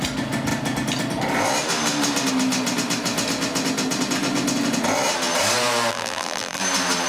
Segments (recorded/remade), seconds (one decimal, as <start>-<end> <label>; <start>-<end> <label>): 0.0-5.9 recorded; 5.9-6.6 remade; 6.6-7.1 recorded